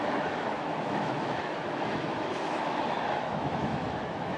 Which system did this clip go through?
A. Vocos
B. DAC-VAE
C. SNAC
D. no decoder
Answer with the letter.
B